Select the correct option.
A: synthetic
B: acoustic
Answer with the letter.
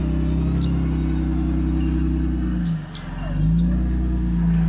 B